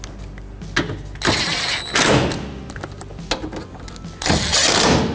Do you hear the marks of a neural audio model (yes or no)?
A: no